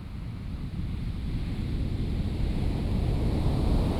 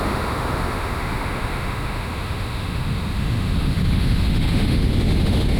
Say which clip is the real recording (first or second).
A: first